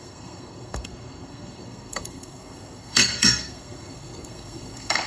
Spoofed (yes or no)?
yes